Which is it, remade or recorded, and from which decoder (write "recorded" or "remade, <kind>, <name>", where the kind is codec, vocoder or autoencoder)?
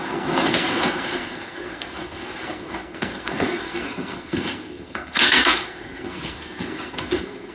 remade, codec, SNAC